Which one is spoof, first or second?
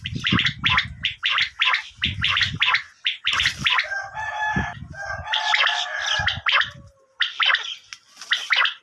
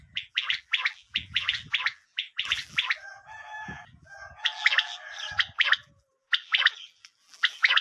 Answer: second